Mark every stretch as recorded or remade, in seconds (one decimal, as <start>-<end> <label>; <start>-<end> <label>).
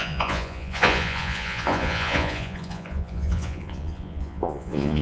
0.0-5.0 remade